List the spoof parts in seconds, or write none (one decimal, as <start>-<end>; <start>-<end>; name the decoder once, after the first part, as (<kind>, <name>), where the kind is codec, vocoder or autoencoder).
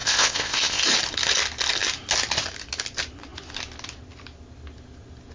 0.0-0.8 (codec, ZipCodec)